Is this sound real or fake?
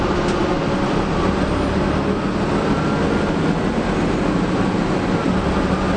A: real